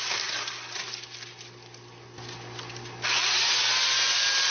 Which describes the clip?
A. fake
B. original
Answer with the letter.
B